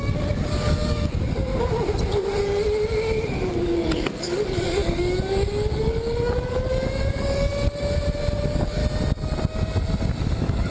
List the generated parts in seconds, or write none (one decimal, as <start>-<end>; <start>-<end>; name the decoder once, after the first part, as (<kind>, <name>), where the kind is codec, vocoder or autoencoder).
0.0-1.5 (codec, DAC); 3.5-7.5; 8.4-8.8; 10.2-10.7